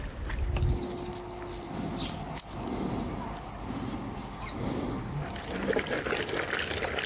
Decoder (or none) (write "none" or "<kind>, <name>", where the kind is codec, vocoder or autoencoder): none